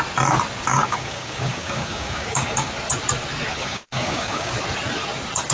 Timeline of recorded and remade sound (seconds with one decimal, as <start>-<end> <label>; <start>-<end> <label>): 0.0-0.7 recorded; 0.7-2.7 remade; 2.7-3.5 recorded; 3.5-4.5 remade; 4.5-5.5 recorded